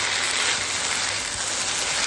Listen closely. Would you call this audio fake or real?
real